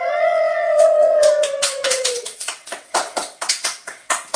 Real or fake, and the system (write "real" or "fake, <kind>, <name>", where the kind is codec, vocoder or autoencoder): fake, vocoder, WaveNeXt